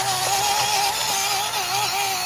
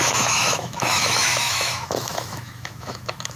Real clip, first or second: first